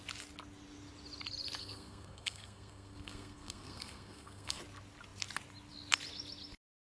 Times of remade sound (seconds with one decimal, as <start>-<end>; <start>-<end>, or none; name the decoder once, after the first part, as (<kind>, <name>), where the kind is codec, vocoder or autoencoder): 1.6-4.6 (codec, SNAC)

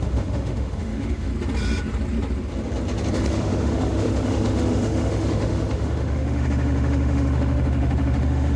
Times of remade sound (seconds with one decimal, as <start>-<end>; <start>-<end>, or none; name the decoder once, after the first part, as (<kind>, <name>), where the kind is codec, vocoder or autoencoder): 0.0-1.3 (autoencoder, DAC-VAE); 3.1-8.6

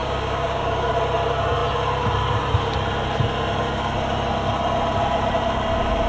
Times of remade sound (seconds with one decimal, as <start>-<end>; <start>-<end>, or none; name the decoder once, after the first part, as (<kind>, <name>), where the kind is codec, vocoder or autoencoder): 0.0-0.9 (codec, DAC)

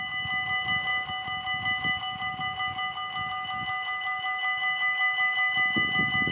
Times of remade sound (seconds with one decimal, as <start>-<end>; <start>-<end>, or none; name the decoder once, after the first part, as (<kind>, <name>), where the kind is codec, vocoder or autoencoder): none

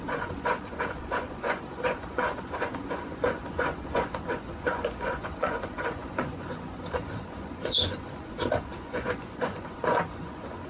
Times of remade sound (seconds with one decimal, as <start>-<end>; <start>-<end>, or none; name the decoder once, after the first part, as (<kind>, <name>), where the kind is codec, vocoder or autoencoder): 0.0-10.7 (vocoder, Vocos)

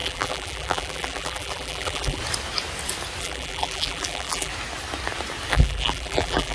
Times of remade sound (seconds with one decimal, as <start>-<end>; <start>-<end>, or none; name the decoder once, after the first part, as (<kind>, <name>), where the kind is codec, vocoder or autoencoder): 0.0-2.2 (vocoder, BigVGAN v2); 3.2-4.5; 5.5-6.5

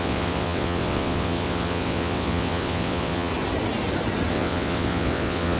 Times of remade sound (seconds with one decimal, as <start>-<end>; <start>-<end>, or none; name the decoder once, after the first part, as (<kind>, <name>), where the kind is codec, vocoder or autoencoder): 0.0-3.3 (vocoder, WaveNeXt); 4.3-5.6